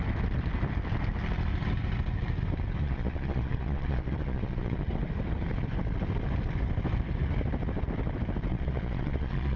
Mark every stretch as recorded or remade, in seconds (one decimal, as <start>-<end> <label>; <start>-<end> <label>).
0.0-2.8 recorded; 2.8-4.9 remade; 4.9-8.5 recorded; 8.5-9.6 remade